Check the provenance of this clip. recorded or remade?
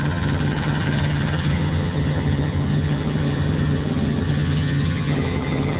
remade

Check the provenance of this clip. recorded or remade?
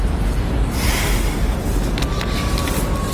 recorded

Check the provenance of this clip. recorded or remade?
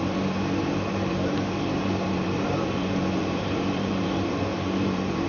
remade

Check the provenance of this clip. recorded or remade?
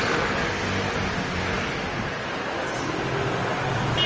recorded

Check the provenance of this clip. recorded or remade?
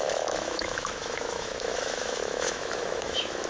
remade